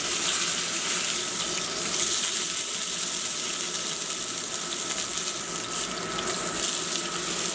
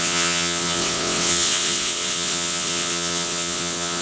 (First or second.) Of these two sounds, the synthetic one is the second